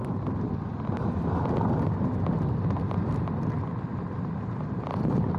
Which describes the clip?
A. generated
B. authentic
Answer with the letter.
B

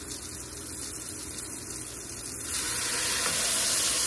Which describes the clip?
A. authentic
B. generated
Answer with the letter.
A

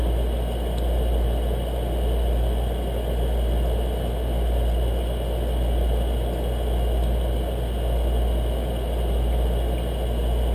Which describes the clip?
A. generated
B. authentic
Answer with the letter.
B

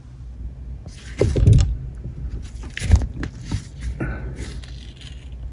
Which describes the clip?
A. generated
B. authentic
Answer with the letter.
B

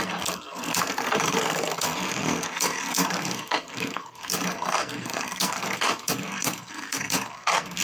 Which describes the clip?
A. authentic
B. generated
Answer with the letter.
B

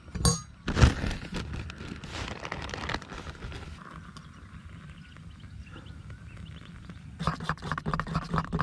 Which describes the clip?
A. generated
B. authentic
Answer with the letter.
B